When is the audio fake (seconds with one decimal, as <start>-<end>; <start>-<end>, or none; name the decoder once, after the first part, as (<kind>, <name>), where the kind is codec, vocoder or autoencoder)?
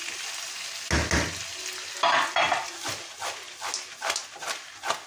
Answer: none